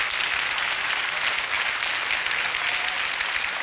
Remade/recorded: recorded